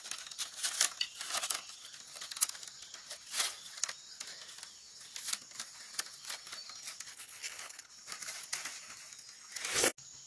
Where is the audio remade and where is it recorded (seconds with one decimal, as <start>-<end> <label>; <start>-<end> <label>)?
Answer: 0.0-7.1 recorded; 7.1-7.9 remade; 7.9-10.3 recorded